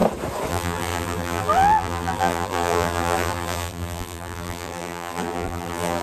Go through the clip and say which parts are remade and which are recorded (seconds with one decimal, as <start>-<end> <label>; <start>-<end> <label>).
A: 0.0-0.5 recorded; 0.5-6.0 remade